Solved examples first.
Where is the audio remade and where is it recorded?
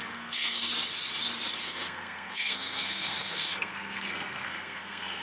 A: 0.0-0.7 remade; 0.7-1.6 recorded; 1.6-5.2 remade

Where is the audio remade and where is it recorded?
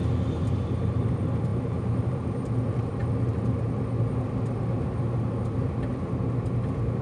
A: 0.0-1.5 remade; 1.5-2.0 recorded; 2.0-3.0 remade; 3.0-5.5 recorded; 5.5-5.9 remade; 5.9-7.0 recorded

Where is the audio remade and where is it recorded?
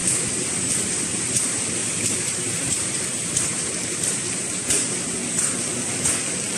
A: 0.0-0.9 recorded; 0.9-5.2 remade; 5.2-6.6 recorded